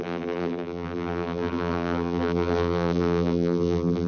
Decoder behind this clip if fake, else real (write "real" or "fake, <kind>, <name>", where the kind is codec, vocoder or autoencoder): fake, vocoder, BigVGAN v2